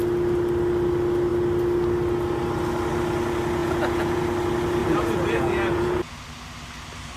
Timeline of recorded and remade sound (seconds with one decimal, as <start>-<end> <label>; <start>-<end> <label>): 0.0-3.6 recorded; 3.6-4.2 remade; 4.2-4.8 recorded; 4.8-6.2 remade; 6.2-7.2 recorded